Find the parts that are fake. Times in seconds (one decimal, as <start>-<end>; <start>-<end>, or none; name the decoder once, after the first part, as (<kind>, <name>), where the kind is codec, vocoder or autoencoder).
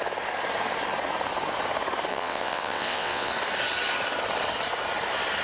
2.1-3.3 (vocoder, WaveNeXt)